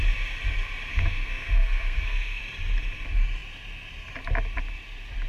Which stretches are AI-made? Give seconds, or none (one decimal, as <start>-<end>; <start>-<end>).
0.9-2.4